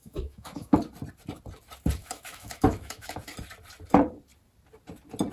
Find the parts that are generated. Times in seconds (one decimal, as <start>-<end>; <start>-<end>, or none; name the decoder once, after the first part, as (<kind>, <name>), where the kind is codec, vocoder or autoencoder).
0.0-0.8 (autoencoder, DAC-VAE); 2.0-3.2